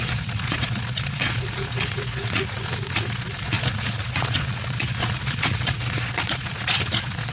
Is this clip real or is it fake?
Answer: fake